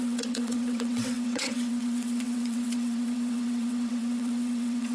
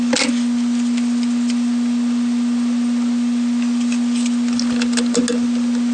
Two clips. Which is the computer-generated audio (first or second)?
first